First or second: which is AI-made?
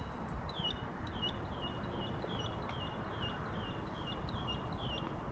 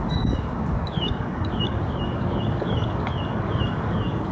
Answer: second